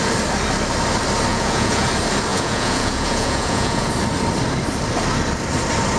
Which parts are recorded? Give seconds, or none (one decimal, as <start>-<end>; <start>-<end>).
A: 0.0-1.3; 1.9-2.3; 3.9-6.0